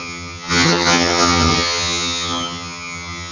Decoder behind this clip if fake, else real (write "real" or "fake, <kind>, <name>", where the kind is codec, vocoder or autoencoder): fake, vocoder, HiFi-GAN